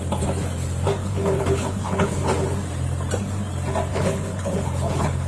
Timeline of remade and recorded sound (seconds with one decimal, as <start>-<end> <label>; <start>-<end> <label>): 0.0-1.0 recorded; 1.0-2.2 remade; 2.2-3.9 recorded; 3.9-5.3 remade